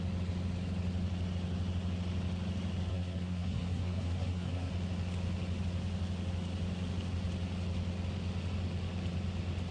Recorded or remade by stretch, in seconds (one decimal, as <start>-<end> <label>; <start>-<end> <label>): 0.0-2.9 recorded; 2.9-4.7 remade; 4.7-9.7 recorded